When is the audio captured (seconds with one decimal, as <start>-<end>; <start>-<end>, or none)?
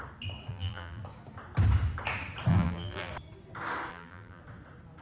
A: 0.0-0.5; 1.0-2.5; 3.1-3.9; 4.4-5.0